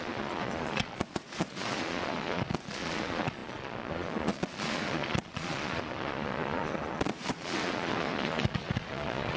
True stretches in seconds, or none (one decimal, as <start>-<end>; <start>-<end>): none